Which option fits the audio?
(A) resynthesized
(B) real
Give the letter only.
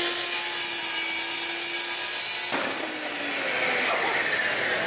B